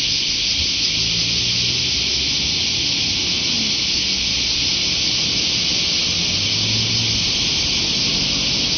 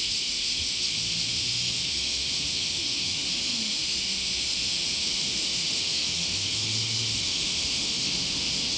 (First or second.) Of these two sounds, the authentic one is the first